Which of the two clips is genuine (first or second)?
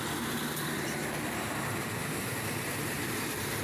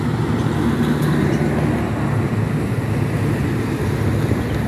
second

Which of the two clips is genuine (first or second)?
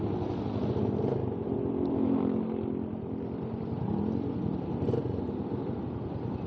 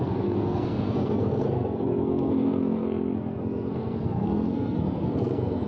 first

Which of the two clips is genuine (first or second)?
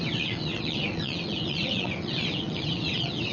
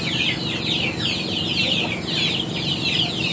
second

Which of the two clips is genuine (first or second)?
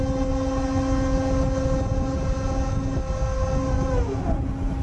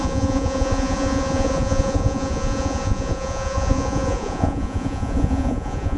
first